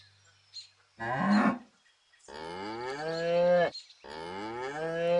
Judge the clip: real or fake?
real